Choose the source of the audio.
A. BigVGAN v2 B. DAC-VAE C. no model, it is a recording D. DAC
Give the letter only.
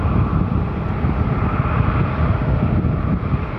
A